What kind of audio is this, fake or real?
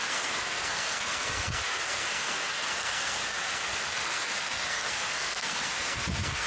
fake